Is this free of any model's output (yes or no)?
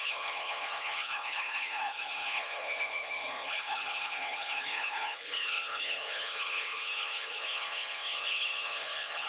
no